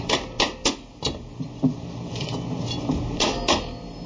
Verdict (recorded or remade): recorded